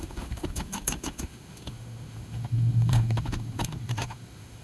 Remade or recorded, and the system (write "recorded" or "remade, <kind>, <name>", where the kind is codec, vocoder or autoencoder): remade, autoencoder, DAC-VAE